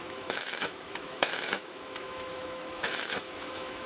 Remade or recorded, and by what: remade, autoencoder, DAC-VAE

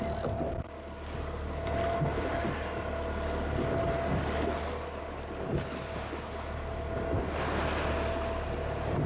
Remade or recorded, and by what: recorded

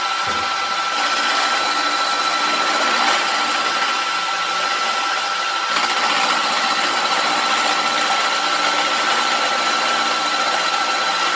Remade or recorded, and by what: recorded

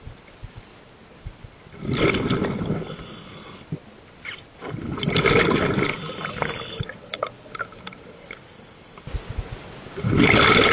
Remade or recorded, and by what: recorded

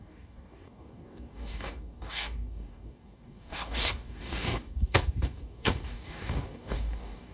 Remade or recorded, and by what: remade, codec, DAC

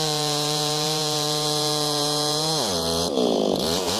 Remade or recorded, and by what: remade, vocoder, Vocos